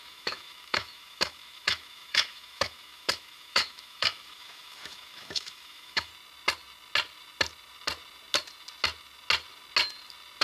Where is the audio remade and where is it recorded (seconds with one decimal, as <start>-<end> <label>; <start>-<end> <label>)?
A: 0.0-6.1 remade; 6.1-10.4 recorded